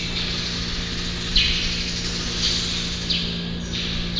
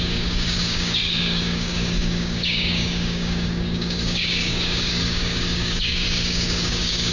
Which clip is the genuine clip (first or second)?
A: first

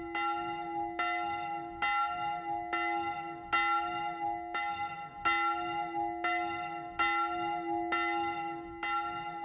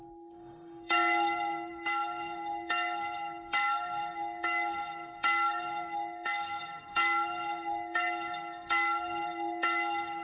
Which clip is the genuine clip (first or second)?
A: first